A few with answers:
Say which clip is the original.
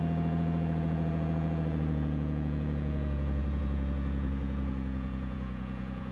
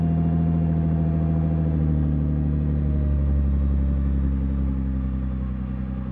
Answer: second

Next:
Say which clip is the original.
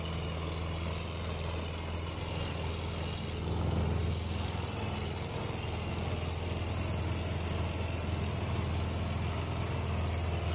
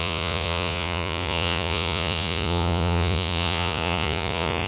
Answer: first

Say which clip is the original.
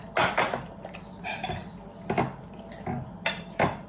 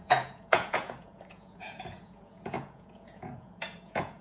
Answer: first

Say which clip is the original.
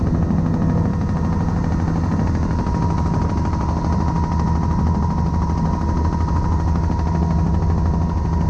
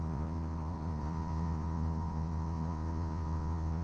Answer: first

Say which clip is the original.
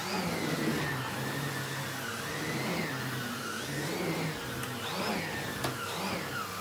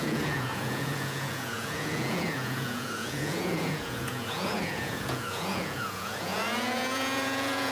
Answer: first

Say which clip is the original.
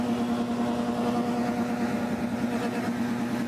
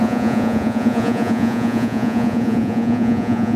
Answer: first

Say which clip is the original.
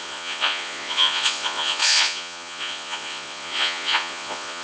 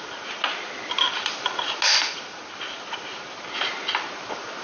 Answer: second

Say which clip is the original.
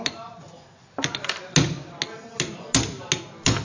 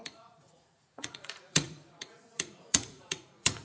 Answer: first